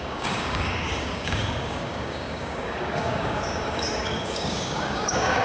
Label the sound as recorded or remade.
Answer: remade